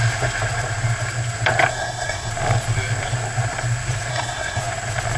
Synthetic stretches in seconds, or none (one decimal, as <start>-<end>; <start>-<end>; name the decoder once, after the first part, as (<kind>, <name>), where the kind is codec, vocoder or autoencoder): 1.7-2.3 (codec, SNAC); 4.1-4.6

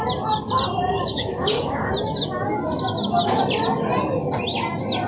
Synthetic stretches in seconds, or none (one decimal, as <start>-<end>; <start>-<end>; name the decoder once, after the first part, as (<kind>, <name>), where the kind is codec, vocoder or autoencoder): 0.9-1.8 (codec, DAC)

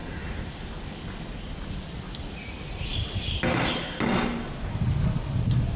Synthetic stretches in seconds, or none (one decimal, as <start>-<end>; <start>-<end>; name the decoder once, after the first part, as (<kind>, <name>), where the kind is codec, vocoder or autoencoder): 0.0-0.7 (vocoder, BigVGAN v2)

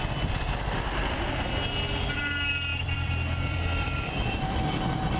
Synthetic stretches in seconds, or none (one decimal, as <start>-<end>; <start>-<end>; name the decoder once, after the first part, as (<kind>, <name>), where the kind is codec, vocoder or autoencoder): 2.7-5.2 (vocoder, BigVGAN v2)

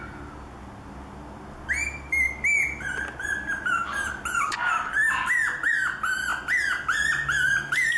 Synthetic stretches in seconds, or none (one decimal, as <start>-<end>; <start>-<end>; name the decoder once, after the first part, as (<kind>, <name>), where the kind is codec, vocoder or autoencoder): none

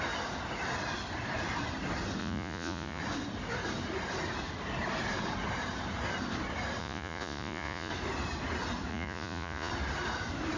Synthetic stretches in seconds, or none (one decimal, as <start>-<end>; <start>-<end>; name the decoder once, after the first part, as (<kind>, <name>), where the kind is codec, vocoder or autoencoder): 2.2-3.0 (vocoder, Vocos); 6.8-7.9; 8.9-9.7

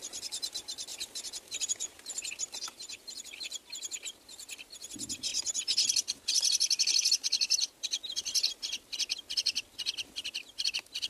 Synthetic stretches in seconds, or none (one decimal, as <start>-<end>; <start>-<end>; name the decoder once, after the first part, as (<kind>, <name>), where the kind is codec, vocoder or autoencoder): none